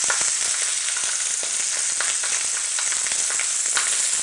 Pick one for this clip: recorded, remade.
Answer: recorded